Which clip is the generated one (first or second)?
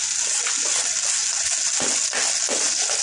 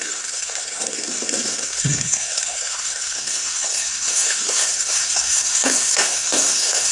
second